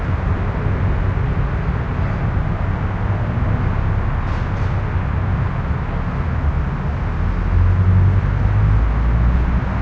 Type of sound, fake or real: real